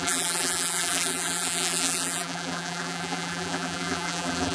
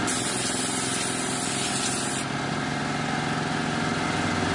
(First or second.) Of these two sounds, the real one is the second